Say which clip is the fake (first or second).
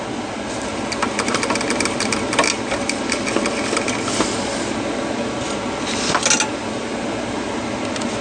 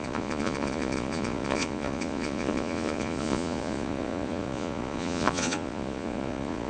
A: second